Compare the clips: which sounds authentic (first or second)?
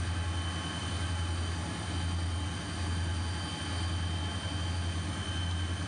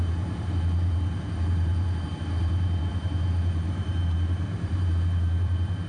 first